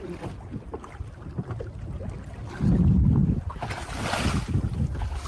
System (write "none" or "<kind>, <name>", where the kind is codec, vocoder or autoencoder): none